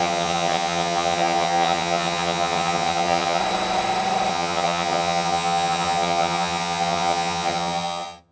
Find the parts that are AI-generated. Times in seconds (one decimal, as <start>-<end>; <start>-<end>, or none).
0.0-3.4; 4.3-8.3